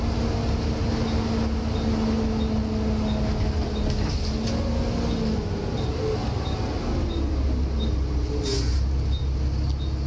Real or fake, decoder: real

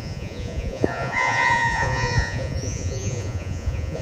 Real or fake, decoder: fake, vocoder, Vocos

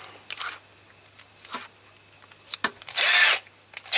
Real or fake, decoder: real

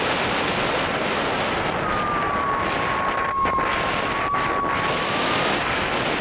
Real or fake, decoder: real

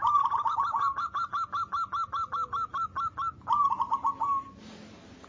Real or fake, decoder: real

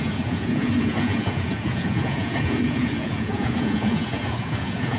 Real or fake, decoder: fake, vocoder, Vocos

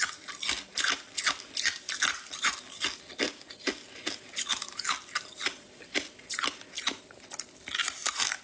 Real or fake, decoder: real